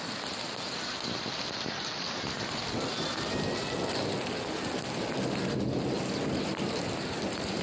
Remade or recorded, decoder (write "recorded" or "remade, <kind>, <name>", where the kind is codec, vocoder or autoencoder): recorded